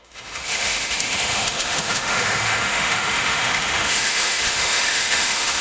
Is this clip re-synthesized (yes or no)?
yes